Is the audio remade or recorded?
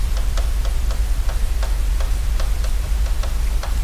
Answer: remade